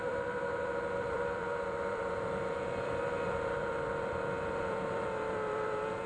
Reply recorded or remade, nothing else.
remade